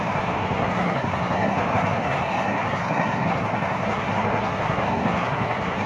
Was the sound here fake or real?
fake